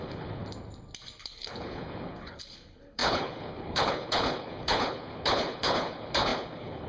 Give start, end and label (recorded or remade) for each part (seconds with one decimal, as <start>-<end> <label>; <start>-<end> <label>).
0.0-0.4 remade; 0.4-1.2 recorded; 1.2-6.9 remade